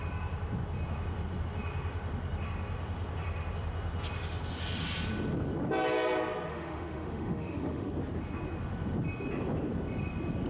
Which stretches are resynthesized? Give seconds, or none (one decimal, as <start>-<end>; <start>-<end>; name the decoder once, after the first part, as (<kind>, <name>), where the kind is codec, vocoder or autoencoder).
6.5-7.9 (autoencoder, DAC-VAE)